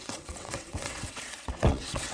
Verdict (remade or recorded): remade